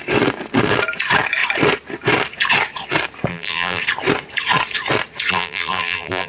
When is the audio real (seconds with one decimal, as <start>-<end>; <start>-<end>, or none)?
0.0-3.3; 3.8-5.3